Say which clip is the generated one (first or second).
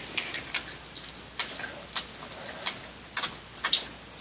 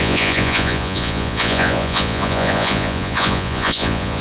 second